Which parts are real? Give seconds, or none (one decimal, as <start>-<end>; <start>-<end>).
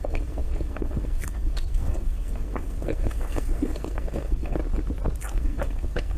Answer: 4.6-5.2